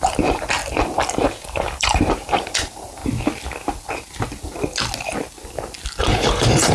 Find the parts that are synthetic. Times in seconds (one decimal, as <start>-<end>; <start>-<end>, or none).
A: 0.0-0.6; 1.2-3.0; 6.0-6.7